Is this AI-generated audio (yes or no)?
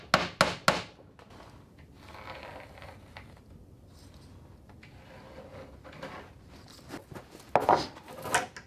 no